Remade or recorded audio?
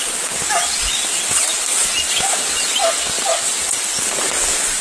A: recorded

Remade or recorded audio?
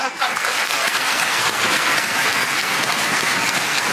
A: remade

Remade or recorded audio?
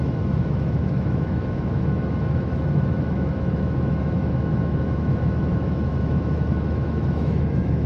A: remade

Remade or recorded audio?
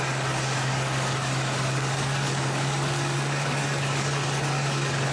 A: remade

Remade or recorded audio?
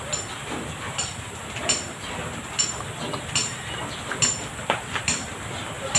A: recorded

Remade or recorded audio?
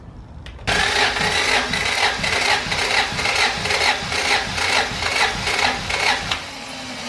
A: recorded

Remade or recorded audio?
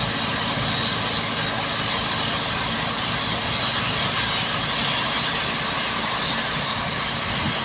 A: recorded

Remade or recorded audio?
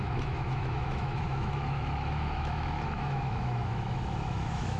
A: remade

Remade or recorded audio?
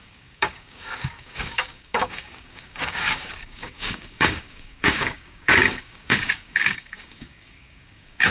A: remade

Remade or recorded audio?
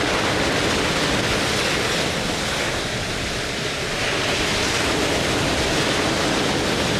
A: recorded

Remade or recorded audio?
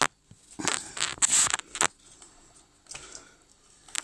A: recorded